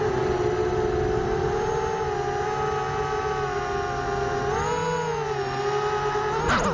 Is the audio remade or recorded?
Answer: recorded